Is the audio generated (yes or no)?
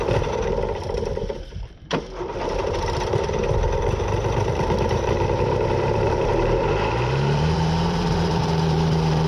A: yes